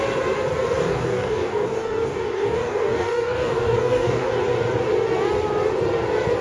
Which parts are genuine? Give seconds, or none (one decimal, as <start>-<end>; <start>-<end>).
0.0-0.8; 4.4-6.4